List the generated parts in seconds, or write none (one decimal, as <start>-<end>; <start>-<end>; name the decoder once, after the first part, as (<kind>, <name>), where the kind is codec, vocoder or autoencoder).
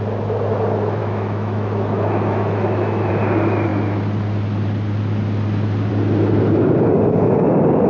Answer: 1.0-3.1 (autoencoder, DAC-VAE)